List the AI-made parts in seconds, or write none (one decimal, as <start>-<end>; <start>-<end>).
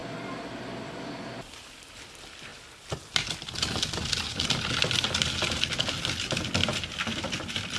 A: 0.0-1.1; 6.6-7.8